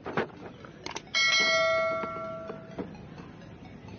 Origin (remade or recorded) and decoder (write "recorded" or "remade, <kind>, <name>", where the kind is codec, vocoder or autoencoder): recorded